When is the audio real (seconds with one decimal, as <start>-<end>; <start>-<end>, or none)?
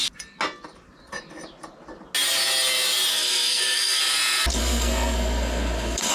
0.0-3.1; 4.0-4.5